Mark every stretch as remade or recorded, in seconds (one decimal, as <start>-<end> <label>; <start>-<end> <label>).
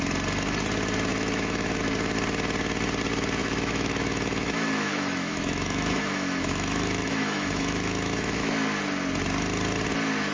0.0-1.1 recorded; 1.1-1.8 remade; 1.8-3.4 recorded; 3.4-8.5 remade; 8.5-10.3 recorded